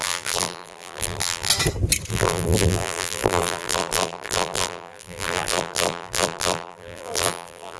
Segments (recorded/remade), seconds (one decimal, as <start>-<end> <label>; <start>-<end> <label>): 0.0-1.5 remade; 1.5-2.1 recorded; 2.1-7.8 remade